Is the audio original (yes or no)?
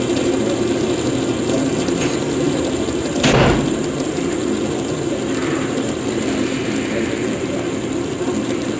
yes